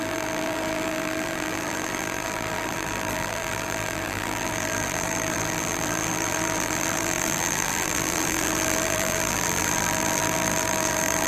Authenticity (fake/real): fake